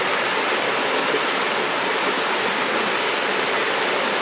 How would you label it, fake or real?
real